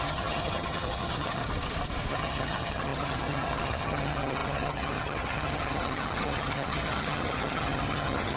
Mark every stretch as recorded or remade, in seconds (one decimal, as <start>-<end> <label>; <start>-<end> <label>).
0.0-1.4 remade; 1.4-2.1 recorded; 2.1-8.4 remade